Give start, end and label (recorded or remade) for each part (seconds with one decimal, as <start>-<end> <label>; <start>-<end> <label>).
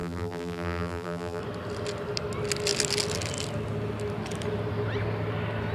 0.0-1.4 remade; 1.4-5.7 recorded